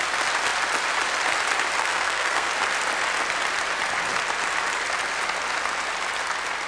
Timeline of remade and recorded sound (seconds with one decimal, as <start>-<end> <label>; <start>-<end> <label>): 0.0-1.8 recorded; 1.8-2.5 remade; 2.5-6.7 recorded